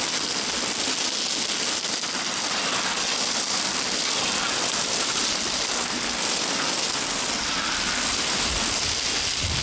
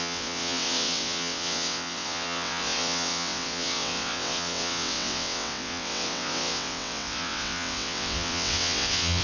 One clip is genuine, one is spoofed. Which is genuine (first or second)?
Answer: first